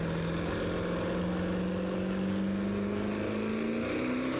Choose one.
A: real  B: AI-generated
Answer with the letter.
A